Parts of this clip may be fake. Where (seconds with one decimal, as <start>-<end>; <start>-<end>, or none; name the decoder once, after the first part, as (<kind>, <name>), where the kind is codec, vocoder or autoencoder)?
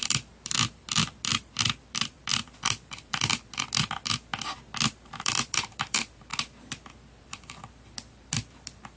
0.0-4.3 (vocoder, BigVGAN v2); 5.1-6.3; 7.2-9.0